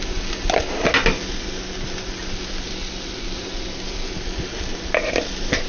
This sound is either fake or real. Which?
real